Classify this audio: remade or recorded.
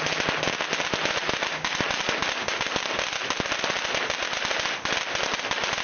recorded